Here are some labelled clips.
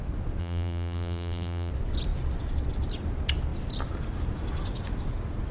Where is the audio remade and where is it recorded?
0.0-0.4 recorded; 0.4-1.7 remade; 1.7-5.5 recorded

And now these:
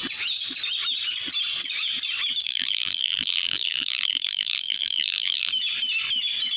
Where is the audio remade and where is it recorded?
0.0-2.4 recorded; 2.4-5.5 remade; 5.5-6.6 recorded

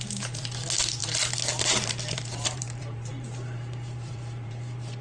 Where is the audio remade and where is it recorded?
0.0-5.0 remade